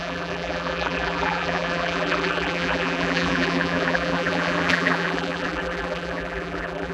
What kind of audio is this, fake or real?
fake